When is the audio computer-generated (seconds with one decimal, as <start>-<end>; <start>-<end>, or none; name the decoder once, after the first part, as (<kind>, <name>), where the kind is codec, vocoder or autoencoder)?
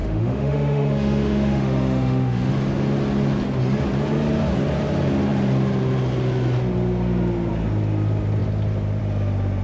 0.0-2.5 (autoencoder, DAC-VAE)